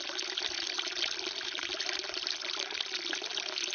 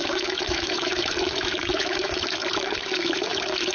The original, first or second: first